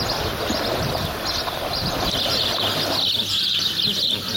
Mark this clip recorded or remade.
recorded